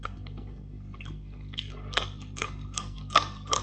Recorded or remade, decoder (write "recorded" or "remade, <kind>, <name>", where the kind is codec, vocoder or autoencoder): remade, codec, SNAC